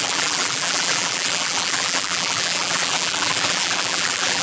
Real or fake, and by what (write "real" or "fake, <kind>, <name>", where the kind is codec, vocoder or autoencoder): fake, vocoder, BigVGAN v2